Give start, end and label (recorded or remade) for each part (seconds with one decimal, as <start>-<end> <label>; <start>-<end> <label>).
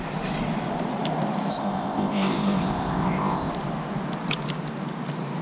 0.0-1.5 recorded; 1.5-3.5 remade; 3.5-5.4 recorded